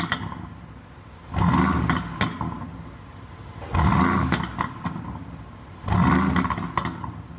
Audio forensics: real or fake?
real